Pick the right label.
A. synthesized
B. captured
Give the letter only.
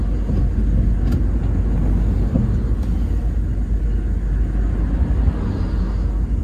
B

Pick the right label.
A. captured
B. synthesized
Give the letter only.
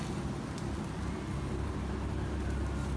A